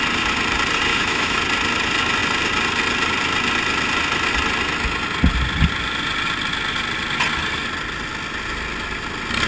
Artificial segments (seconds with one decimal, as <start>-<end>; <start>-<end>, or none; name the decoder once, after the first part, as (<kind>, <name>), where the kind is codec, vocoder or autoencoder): 0.9-1.4 (autoencoder, DAC-VAE)